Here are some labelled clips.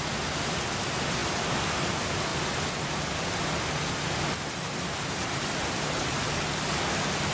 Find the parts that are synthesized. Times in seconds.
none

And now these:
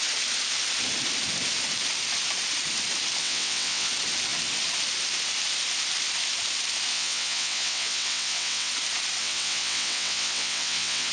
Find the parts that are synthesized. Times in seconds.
3.2-3.9 (vocoder, WaveNeXt); 6.9-8.7; 9.2-11.1

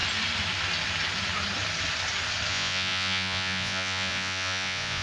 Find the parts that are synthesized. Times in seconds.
2.5-5.0 (vocoder, Vocos)

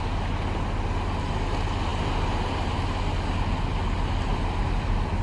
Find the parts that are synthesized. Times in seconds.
none

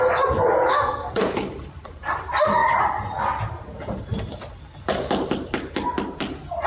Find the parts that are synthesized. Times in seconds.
0.7-1.2 (codec, SNAC)

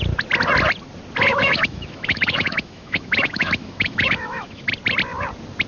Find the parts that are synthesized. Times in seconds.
1.3-4.7 (autoencoder, DAC-VAE)

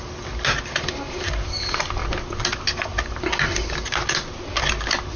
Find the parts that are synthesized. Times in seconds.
none